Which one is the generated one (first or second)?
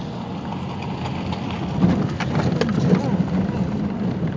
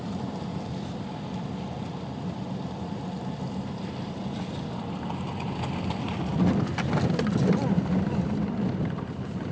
second